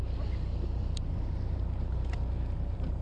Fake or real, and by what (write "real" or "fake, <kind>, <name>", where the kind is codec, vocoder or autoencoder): real